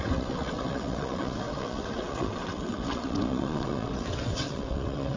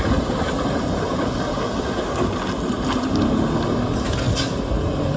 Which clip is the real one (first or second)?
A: second